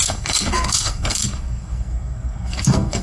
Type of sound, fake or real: fake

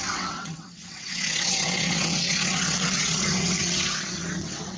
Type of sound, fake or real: fake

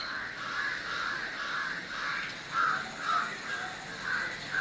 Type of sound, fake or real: real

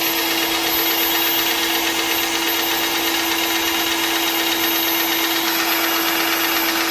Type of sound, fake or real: real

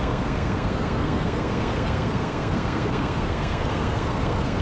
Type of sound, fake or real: fake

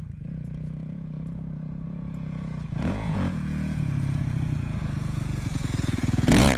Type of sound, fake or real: fake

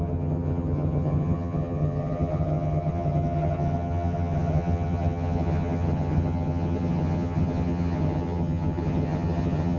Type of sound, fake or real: fake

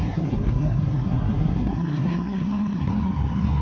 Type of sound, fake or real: fake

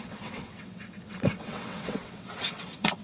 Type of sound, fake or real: fake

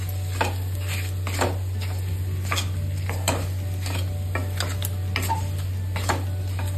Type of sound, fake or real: real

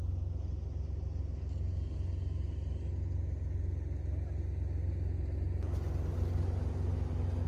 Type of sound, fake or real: real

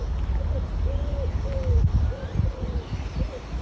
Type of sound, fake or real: real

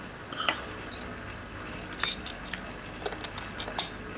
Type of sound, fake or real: real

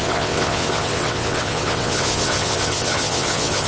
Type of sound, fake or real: fake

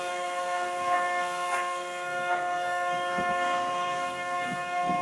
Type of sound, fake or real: fake